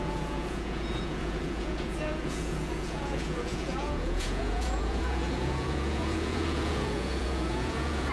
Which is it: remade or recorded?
remade